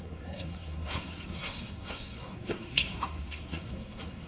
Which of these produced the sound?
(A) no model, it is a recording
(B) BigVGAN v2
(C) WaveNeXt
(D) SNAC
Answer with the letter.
D